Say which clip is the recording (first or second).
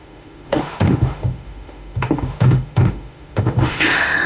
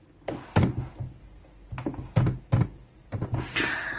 second